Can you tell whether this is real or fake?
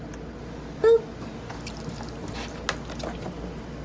real